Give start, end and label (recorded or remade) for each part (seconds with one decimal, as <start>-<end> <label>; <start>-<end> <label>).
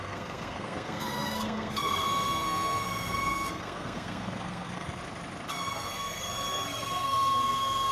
0.0-5.0 remade; 5.0-5.5 recorded; 5.5-7.9 remade